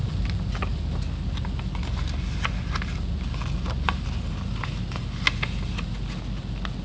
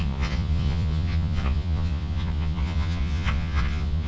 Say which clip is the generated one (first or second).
second